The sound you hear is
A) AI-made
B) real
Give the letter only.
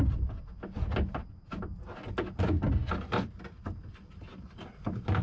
B